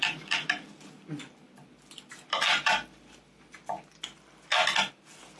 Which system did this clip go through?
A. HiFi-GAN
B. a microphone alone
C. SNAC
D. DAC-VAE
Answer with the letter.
B